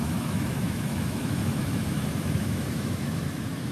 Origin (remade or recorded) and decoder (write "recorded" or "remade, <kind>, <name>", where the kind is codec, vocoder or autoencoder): remade, autoencoder, DAC-VAE